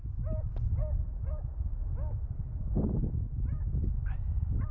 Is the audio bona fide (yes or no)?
yes